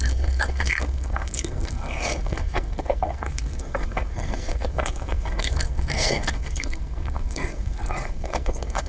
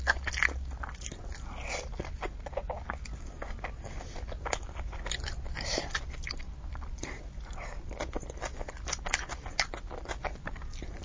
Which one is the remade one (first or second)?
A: first